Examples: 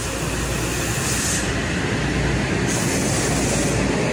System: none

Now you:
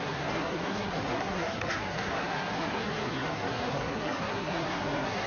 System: codec, SNAC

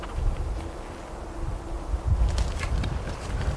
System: none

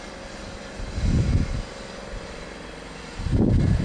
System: none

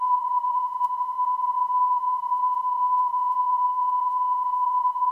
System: vocoder, Vocos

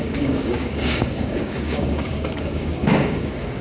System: codec, DAC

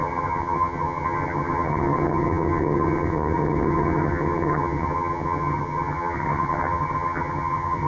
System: vocoder, HiFi-GAN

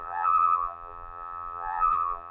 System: vocoder, BigVGAN v2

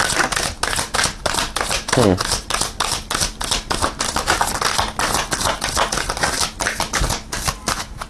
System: none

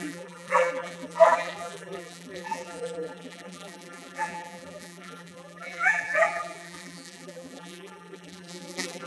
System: vocoder, BigVGAN v2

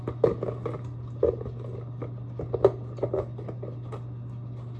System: none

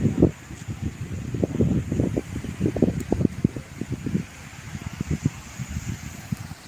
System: none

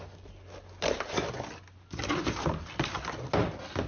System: none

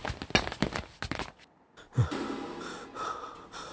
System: none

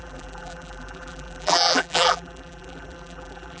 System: vocoder, BigVGAN v2